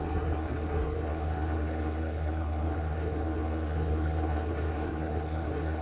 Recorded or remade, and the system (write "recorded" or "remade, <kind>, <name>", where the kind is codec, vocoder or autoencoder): remade, codec, SNAC